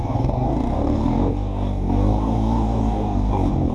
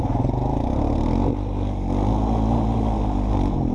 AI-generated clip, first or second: first